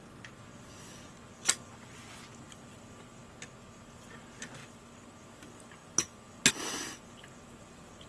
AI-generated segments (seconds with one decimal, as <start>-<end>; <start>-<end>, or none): none